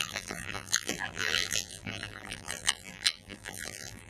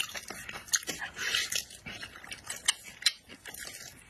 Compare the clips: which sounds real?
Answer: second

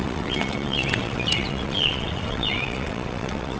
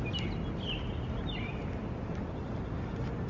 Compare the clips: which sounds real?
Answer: second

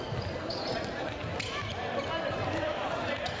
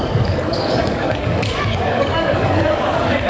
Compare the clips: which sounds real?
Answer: first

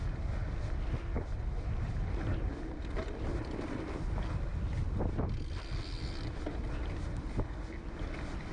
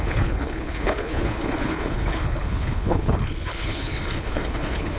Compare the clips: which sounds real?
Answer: first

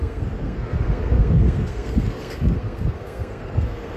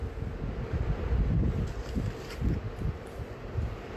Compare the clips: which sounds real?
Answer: second